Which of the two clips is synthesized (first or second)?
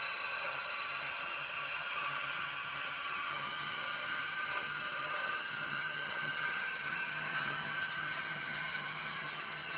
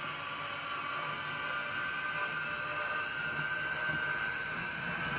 first